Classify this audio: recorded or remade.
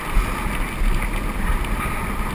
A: recorded